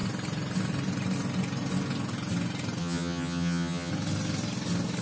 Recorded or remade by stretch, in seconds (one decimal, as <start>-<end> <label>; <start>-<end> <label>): 0.0-2.8 recorded; 2.8-3.9 remade; 3.9-5.0 recorded